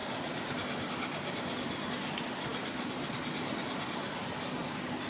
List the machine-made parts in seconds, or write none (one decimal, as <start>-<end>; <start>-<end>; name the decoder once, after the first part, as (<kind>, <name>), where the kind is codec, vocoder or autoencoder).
none